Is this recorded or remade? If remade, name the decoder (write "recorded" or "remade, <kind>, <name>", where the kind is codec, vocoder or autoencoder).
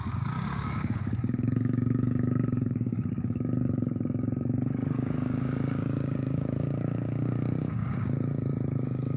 remade, codec, DAC